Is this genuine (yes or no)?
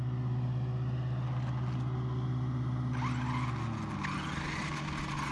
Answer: yes